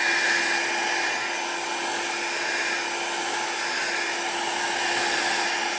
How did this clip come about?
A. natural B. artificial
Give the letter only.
A